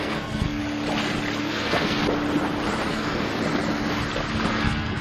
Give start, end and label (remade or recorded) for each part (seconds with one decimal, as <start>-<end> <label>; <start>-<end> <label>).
0.0-0.6 remade; 0.6-1.4 recorded; 1.4-2.0 remade; 2.0-2.9 recorded; 2.9-3.3 remade; 3.3-4.5 recorded; 4.5-5.0 remade